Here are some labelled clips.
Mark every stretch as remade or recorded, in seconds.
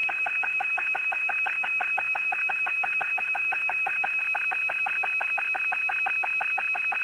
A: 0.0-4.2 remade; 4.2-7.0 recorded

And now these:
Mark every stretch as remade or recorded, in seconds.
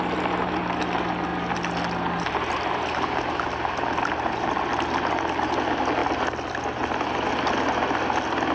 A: 0.0-8.5 recorded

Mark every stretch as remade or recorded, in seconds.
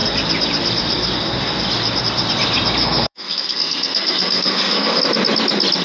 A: 0.0-2.8 recorded; 2.8-5.0 remade; 5.0-5.8 recorded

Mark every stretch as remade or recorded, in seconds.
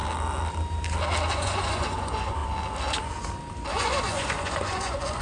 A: 0.0-1.3 recorded; 1.3-2.4 remade; 2.4-3.7 recorded; 3.7-5.2 remade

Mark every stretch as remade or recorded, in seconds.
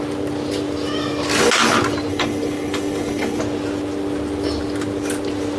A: 0.0-2.1 recorded; 2.1-3.4 remade; 3.4-5.6 recorded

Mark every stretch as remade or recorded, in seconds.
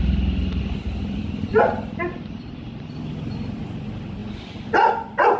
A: 0.0-5.4 recorded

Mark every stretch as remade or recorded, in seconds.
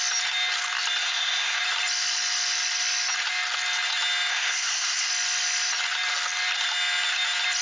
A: 0.0-1.0 recorded; 1.0-1.6 remade; 1.6-4.3 recorded; 4.3-5.1 remade; 5.1-7.6 recorded